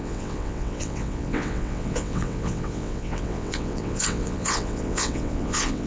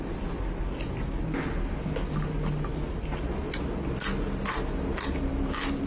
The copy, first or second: first